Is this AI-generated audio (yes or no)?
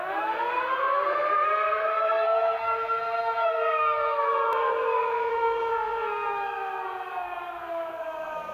yes